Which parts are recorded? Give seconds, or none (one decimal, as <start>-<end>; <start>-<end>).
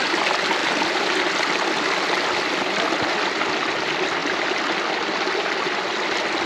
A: 0.0-6.5